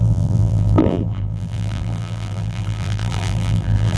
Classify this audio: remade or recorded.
remade